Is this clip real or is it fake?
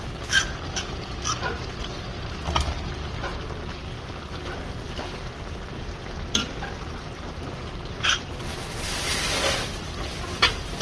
real